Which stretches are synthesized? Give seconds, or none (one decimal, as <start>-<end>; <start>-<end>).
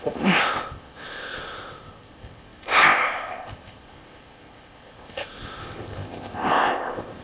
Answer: 0.0-7.2